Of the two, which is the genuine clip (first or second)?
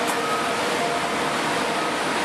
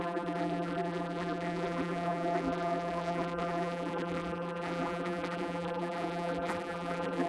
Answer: first